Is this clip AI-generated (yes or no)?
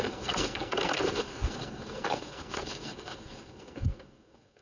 yes